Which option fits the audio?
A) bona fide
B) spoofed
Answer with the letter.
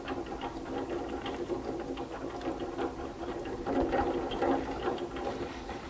A